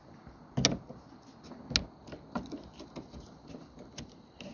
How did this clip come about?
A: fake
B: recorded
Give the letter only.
B